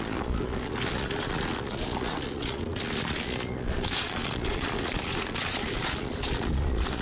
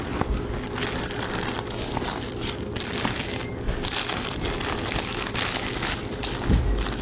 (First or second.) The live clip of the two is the second